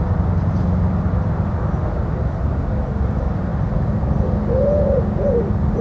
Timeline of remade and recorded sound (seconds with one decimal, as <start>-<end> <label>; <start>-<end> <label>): 0.0-5.8 recorded